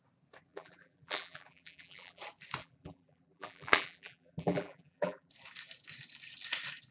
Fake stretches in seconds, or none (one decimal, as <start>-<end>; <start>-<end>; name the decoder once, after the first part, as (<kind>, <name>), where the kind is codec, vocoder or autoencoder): 0.5-2.2 (vocoder, BigVGAN v2); 2.6-5.3